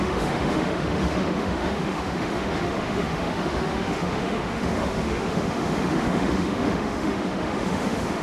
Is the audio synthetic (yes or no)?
yes